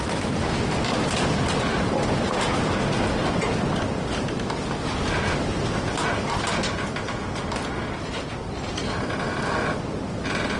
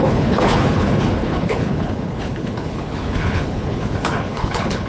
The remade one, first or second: second